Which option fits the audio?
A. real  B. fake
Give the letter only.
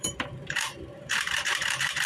B